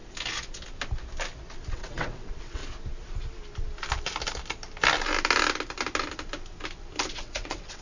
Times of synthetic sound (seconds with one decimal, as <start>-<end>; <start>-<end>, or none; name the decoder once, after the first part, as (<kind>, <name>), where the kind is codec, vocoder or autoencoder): 1.7-2.6 (vocoder, WaveNeXt); 7.1-7.8